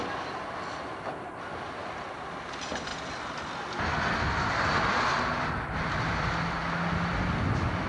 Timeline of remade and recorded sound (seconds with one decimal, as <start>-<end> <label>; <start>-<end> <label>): 0.0-7.9 recorded